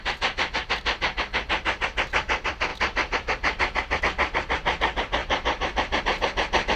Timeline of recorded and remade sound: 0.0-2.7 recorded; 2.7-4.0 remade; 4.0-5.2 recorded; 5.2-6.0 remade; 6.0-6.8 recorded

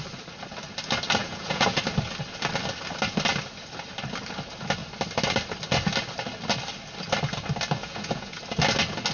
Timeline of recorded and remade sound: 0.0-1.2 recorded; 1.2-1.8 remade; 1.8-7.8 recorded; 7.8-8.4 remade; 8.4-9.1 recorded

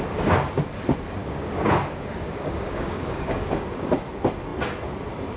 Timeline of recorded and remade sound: 0.0-1.2 recorded; 1.2-3.9 remade; 3.9-5.4 recorded

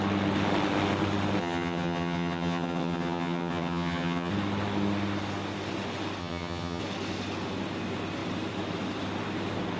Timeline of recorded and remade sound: 0.0-1.4 recorded; 1.4-4.3 remade; 4.3-6.2 recorded; 6.2-6.8 remade; 6.8-9.8 recorded

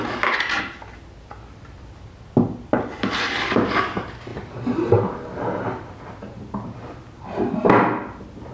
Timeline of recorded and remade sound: 0.0-8.5 recorded

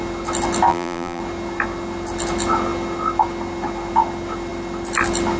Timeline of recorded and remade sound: 0.0-0.7 recorded; 0.7-1.2 remade; 1.2-5.4 recorded

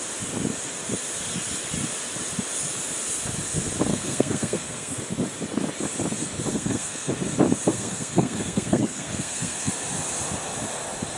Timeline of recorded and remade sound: 0.0-3.9 recorded; 3.9-5.0 remade; 5.0-6.5 recorded; 6.5-7.1 remade; 7.1-7.7 recorded; 7.7-9.7 remade; 9.7-11.2 recorded